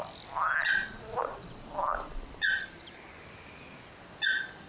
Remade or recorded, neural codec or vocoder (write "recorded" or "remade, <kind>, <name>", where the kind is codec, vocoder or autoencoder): recorded